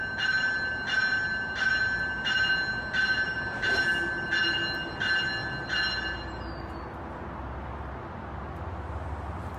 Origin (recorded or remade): recorded